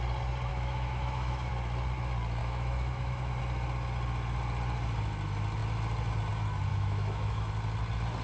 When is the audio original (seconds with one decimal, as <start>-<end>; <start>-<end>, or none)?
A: 0.0-0.5; 1.5-2.4; 3.4-6.7; 7.5-8.2